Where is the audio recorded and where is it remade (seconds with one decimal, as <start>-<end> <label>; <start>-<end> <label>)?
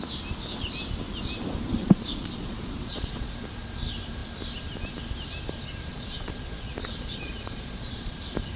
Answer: 0.0-1.8 recorded; 1.8-3.3 remade; 3.3-5.9 recorded; 5.9-8.2 remade; 8.2-8.6 recorded